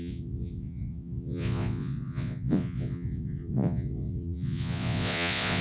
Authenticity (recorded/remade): remade